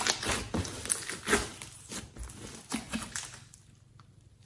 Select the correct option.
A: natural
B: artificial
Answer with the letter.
A